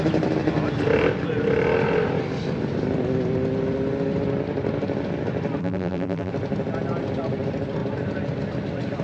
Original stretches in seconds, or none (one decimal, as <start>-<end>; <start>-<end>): 0.0-5.6; 6.3-9.0